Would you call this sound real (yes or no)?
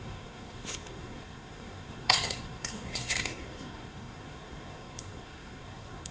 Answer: no